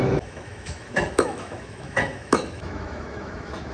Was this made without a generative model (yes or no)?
no